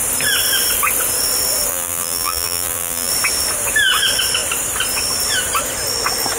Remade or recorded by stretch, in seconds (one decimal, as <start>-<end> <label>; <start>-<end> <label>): 0.0-1.7 recorded; 1.7-3.1 remade; 3.1-6.4 recorded